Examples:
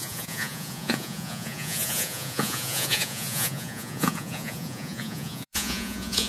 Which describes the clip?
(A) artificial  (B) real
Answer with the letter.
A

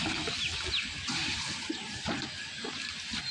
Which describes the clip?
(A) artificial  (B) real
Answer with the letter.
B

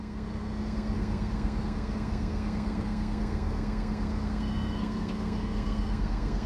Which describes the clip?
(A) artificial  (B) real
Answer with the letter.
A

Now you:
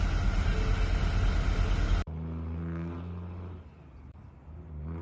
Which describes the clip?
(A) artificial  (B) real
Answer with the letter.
B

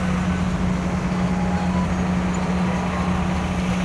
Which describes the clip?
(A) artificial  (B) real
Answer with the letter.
B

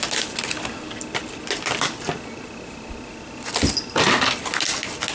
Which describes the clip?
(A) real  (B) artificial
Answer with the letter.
A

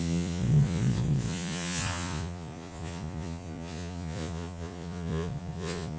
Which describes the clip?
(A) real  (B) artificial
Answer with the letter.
B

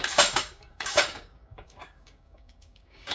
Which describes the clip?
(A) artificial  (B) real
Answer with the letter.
A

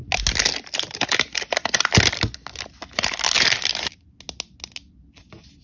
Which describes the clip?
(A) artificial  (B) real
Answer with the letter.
B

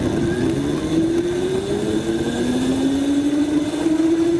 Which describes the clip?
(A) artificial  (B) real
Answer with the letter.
B